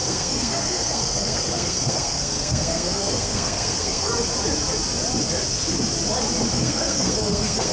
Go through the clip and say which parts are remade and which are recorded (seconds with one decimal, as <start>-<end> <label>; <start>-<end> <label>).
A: 0.0-4.1 remade; 4.1-6.5 recorded; 6.5-7.7 remade